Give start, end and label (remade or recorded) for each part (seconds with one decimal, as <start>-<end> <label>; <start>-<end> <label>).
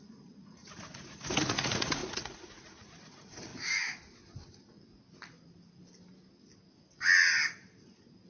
0.0-3.5 remade; 3.5-8.3 recorded